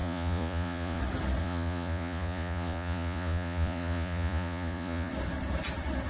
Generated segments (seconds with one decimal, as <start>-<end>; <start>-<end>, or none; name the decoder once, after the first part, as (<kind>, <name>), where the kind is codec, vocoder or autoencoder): 0.0-1.0 (vocoder, Vocos); 1.4-5.1